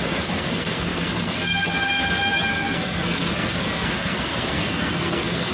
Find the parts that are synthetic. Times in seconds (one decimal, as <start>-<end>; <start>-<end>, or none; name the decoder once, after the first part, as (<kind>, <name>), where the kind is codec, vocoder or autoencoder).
0.0-5.5 (codec, SNAC)

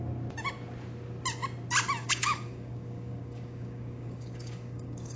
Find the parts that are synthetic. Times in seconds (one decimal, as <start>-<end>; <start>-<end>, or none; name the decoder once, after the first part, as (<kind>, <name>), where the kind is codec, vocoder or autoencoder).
2.0-5.2 (codec, DAC)

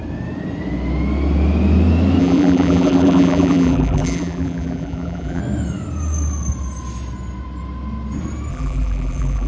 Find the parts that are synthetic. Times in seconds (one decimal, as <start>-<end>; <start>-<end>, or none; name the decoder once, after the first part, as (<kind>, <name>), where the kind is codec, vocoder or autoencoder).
2.2-5.4 (vocoder, BigVGAN v2); 8.5-9.5